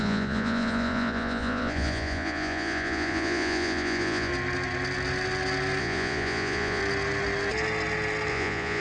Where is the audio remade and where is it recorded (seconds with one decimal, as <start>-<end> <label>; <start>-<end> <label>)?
0.0-4.3 remade; 4.3-5.8 recorded; 5.8-6.8 remade; 6.8-8.3 recorded; 8.3-8.8 remade